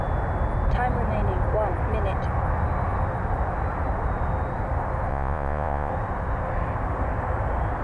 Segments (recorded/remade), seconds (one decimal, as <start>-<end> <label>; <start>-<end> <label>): 0.0-5.1 recorded; 5.1-5.9 remade; 5.9-7.8 recorded